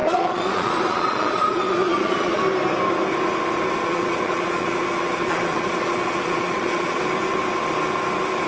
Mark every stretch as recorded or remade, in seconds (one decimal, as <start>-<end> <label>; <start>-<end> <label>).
0.0-2.4 remade; 2.4-3.8 recorded; 3.8-7.0 remade; 7.0-8.5 recorded